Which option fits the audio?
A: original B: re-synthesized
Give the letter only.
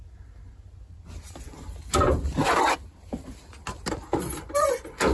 A